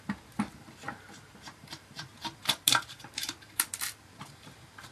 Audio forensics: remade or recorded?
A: remade